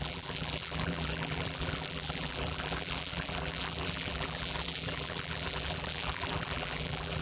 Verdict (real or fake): fake